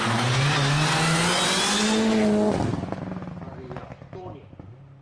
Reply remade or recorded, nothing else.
recorded